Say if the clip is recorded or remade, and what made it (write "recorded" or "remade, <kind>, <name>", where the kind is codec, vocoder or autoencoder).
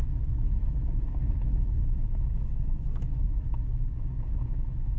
remade, autoencoder, DAC-VAE